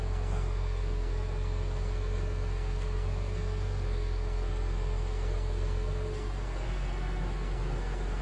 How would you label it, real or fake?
fake